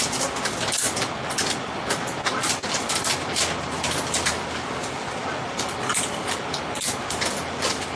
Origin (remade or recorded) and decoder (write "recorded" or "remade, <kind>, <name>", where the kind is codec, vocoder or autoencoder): recorded